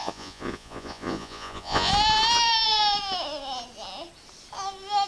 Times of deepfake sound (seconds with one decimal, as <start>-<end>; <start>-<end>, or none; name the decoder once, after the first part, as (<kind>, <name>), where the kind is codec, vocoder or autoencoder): 0.0-1.9 (vocoder, Vocos)